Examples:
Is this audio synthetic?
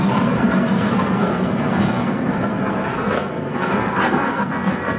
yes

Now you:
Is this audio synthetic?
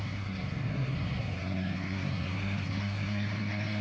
yes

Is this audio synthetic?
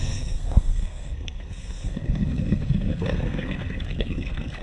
yes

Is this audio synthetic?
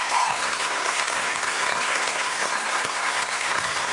yes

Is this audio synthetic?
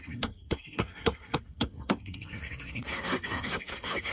yes